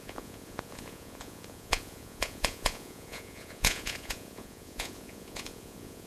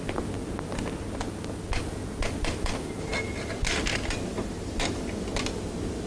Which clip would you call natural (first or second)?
second